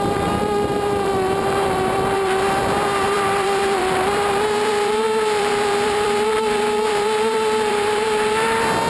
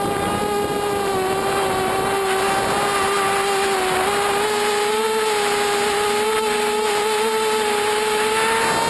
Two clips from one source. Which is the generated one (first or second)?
first